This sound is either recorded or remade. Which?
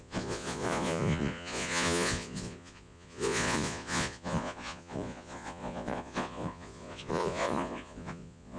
remade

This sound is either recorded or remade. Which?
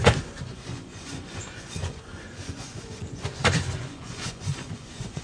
remade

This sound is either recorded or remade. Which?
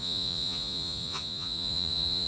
remade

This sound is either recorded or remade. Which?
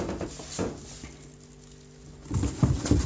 recorded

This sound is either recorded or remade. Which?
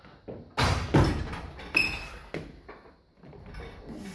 recorded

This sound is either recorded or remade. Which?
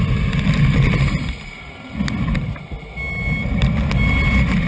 recorded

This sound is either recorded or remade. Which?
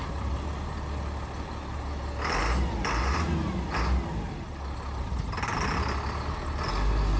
recorded